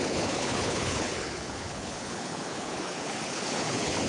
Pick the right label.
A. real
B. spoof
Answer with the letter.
B